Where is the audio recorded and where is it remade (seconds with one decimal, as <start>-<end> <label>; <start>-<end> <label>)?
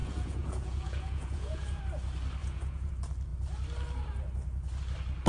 0.0-1.8 remade; 1.8-2.4 recorded; 2.4-2.9 remade; 2.9-5.3 recorded